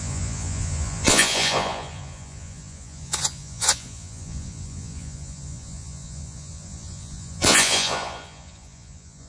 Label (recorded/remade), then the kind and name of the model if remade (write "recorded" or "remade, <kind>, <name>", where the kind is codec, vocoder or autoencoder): remade, vocoder, Vocos